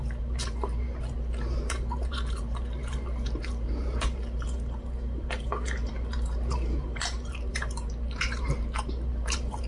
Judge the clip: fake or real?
fake